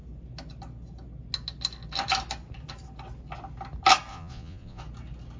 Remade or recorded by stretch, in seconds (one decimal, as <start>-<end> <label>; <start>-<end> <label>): 0.0-4.1 recorded; 4.1-4.8 remade; 4.8-5.4 recorded